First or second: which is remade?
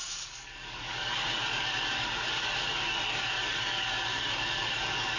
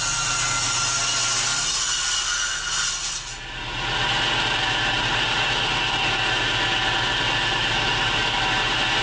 first